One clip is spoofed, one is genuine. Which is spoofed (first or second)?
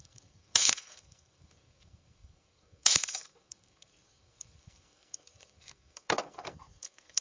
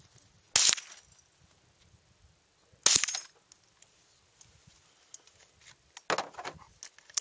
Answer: first